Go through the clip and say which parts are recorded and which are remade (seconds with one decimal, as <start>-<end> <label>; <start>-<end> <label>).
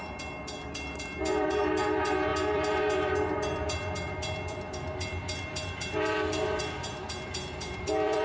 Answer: 0.0-8.2 remade